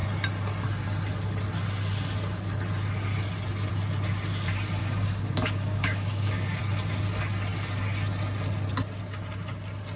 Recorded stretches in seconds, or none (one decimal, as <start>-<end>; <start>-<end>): 0.0-4.8; 6.6-10.0